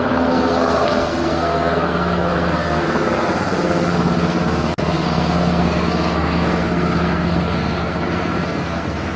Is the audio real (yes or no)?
no